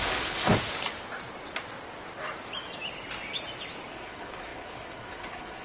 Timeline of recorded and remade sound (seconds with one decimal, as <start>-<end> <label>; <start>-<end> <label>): 0.0-0.5 remade; 0.5-3.9 recorded; 3.9-5.6 remade